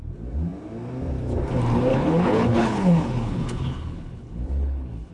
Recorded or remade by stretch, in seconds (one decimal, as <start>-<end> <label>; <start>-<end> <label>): 0.0-1.9 recorded; 1.9-5.1 remade